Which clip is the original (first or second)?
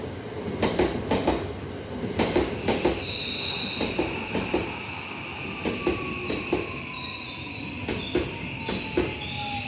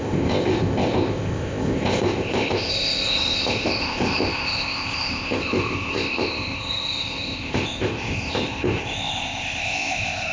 first